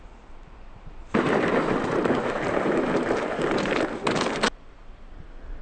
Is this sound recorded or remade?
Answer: recorded